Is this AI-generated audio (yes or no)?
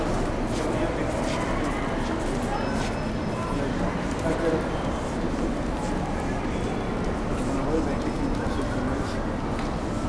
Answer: no